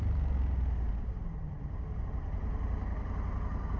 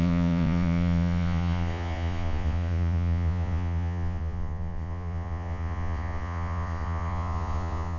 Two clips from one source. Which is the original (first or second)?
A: first